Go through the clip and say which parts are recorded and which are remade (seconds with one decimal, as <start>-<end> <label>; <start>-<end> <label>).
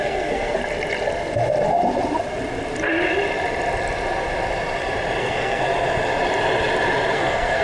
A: 0.0-0.6 remade; 0.6-5.2 recorded; 5.2-5.7 remade; 5.7-7.1 recorded; 7.1-7.6 remade